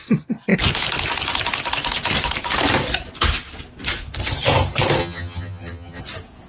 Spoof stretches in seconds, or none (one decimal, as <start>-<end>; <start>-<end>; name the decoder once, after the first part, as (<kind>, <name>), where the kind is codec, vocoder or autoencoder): 5.0-6.0 (vocoder, HiFi-GAN)